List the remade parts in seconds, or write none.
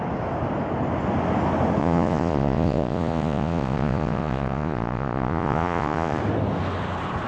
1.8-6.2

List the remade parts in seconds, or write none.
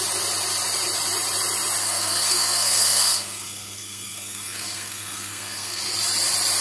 1.8-5.8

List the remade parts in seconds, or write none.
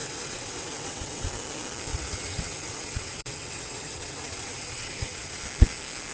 0.0-1.3; 1.9-5.4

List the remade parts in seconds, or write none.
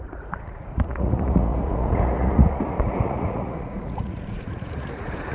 0.0-5.3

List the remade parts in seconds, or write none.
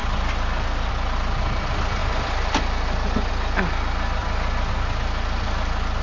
2.0-3.3; 4.2-4.7